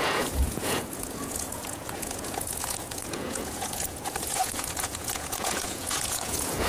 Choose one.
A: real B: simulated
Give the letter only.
B